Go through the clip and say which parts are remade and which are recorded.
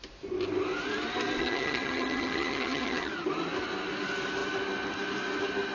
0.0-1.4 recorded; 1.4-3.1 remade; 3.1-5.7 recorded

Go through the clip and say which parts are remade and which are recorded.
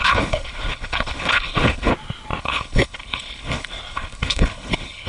0.0-1.9 remade; 1.9-2.4 recorded; 2.4-5.1 remade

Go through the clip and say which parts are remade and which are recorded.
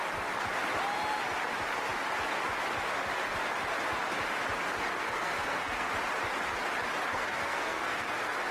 0.0-4.9 recorded; 4.9-5.9 remade; 5.9-7.1 recorded; 7.1-8.5 remade